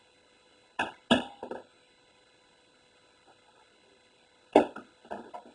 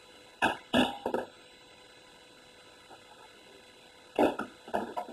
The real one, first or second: first